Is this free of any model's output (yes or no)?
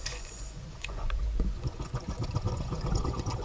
no